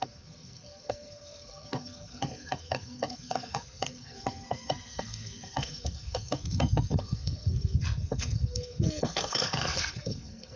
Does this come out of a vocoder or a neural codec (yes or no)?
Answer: yes